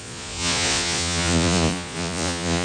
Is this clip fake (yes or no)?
yes